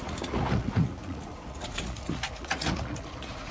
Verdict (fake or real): fake